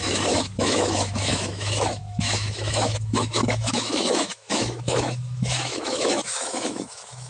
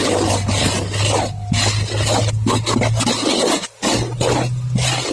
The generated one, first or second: first